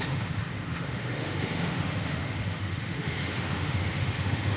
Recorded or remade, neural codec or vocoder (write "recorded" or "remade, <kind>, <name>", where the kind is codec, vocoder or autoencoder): remade, autoencoder, DAC-VAE